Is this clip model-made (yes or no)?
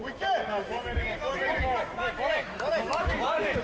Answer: yes